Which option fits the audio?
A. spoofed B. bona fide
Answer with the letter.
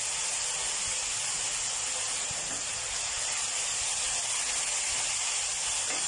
B